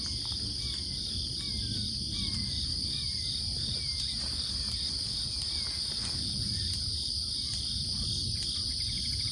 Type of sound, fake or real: real